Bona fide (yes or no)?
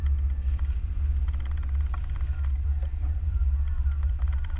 yes